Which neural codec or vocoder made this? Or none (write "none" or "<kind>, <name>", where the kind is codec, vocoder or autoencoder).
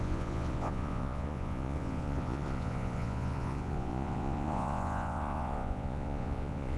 vocoder, Vocos